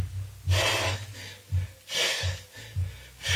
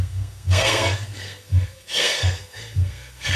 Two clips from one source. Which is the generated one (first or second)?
second